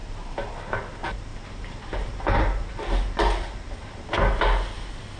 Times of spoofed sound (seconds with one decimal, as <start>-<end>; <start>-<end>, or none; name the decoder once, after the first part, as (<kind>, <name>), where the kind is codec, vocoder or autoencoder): 1.3-4.4 (vocoder, BigVGAN v2)